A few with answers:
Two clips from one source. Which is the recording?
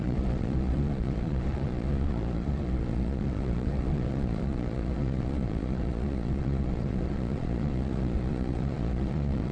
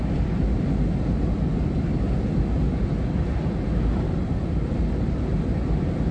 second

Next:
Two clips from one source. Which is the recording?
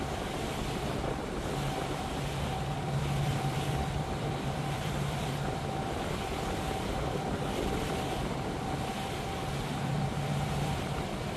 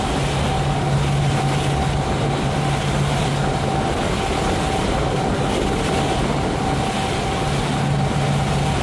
second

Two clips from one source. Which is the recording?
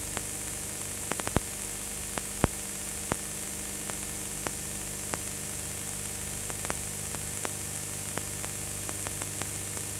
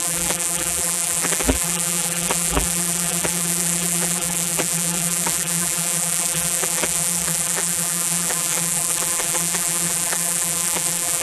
first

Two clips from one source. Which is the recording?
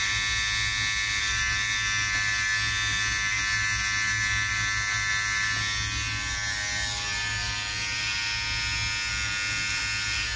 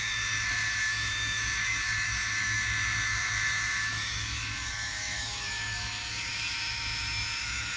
first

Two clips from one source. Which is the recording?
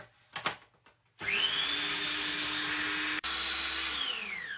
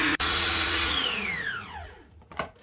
first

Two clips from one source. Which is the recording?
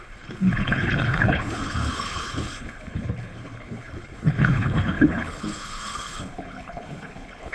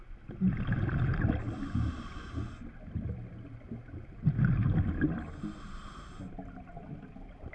second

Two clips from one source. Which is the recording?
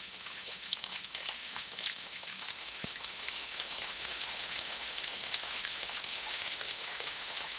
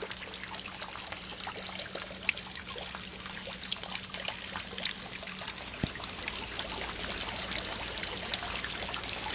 second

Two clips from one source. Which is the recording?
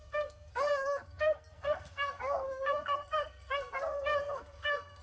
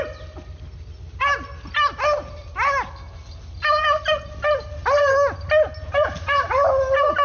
second